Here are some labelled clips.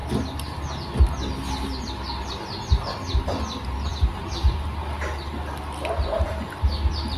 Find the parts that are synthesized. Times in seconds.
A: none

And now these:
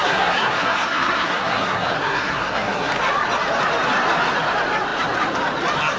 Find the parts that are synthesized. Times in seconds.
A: 0.0-2.9 (codec, SNAC)

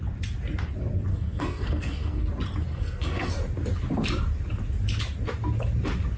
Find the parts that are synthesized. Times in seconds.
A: 1.1-2.3 (codec, SNAC); 2.7-3.3

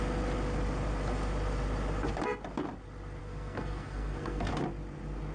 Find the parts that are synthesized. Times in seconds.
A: 3.2-4.5 (codec, SNAC)

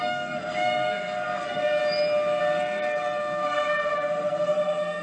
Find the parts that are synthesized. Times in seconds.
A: 0.0-1.8 (codec, SNAC); 2.4-5.0

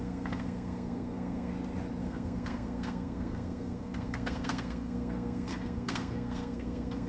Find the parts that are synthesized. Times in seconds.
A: 0.0-1.5 (codec, SNAC); 2.0-7.1

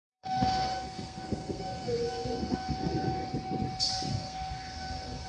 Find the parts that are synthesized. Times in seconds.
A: 0.0-3.3 (codec, SNAC); 4.1-5.3